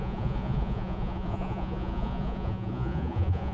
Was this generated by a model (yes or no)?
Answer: yes